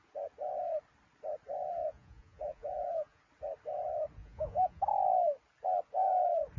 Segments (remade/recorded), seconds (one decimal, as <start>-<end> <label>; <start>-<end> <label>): 0.0-1.8 recorded; 1.8-3.2 remade; 3.2-4.2 recorded; 4.2-4.8 remade; 4.8-6.6 recorded